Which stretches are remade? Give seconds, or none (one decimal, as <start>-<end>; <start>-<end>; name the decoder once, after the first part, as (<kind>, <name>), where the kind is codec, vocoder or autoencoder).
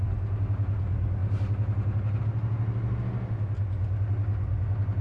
none